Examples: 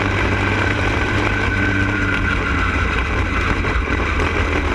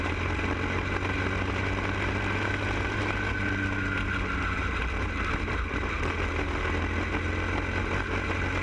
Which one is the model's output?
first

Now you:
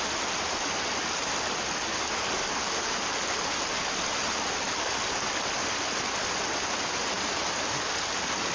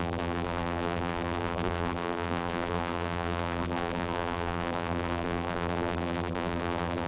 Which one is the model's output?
second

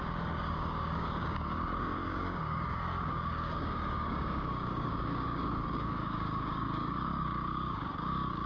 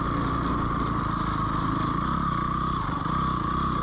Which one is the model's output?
first